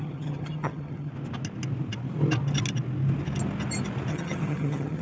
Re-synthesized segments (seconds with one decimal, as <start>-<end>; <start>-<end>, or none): 0.0-1.1; 4.1-5.0

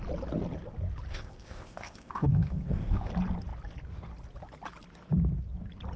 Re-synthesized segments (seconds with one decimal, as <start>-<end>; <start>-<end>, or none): 1.1-3.1